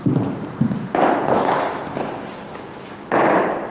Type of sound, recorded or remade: recorded